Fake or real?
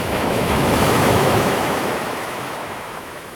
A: fake